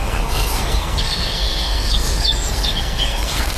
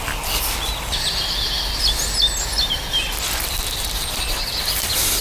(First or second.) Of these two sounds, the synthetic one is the first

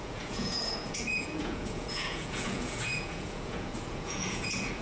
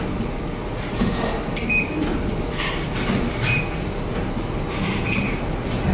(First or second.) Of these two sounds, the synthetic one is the first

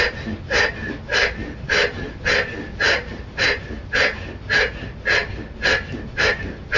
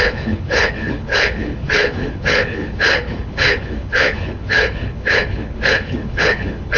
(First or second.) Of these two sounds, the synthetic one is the second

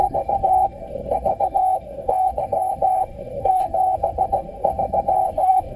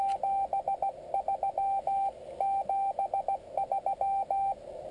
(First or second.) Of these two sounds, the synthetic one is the first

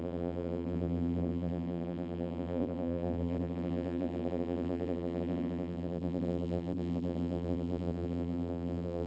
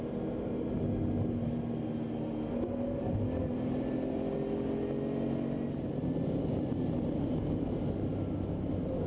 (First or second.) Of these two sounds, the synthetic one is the first